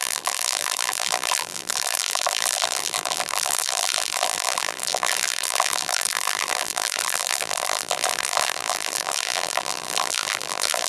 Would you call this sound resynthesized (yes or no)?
yes